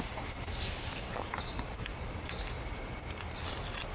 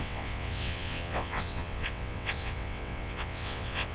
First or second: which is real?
first